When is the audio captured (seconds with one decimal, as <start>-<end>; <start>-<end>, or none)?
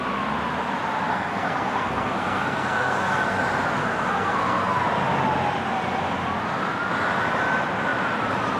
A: 0.0-1.1; 3.4-3.8; 4.8-8.6